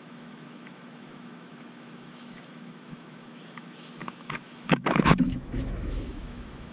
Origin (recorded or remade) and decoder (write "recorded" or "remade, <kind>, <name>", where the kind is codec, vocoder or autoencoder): remade, autoencoder, DAC-VAE